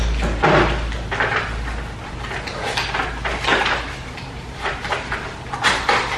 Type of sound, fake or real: real